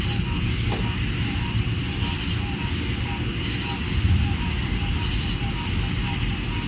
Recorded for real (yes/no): yes